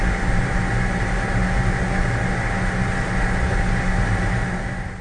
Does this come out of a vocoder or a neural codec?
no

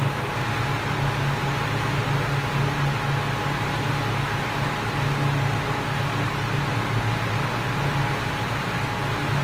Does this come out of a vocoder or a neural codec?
no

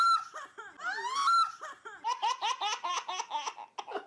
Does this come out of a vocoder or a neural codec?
no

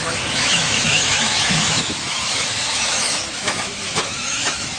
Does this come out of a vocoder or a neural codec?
yes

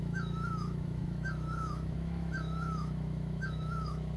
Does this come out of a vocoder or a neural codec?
yes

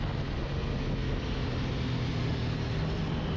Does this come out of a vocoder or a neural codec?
no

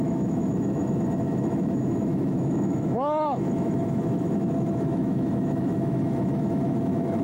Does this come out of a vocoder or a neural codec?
yes